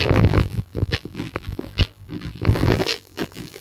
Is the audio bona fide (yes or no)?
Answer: no